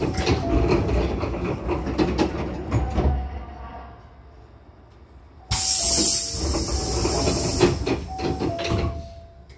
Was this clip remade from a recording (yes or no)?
no